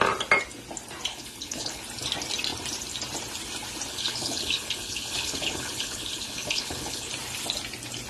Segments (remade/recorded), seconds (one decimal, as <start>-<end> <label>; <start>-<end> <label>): 0.0-1.1 recorded; 1.1-1.8 remade; 1.8-3.9 recorded; 3.9-7.1 remade; 7.1-8.1 recorded